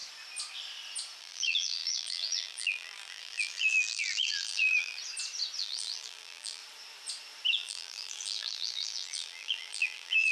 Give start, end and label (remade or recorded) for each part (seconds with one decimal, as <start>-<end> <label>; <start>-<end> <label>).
0.0-1.2 recorded; 1.2-5.0 remade; 5.0-5.6 recorded; 5.6-6.6 remade; 6.6-7.5 recorded; 7.5-10.3 remade